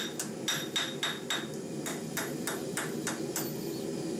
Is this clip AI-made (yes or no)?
no